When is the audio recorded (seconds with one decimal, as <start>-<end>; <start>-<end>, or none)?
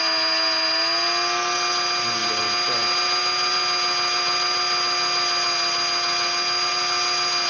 0.0-7.5